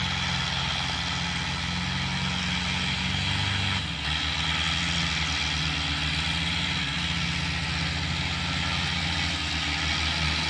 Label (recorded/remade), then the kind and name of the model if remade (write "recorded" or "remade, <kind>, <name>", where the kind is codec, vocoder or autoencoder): recorded